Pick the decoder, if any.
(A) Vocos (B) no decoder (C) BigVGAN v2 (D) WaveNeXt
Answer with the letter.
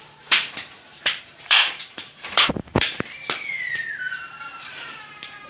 C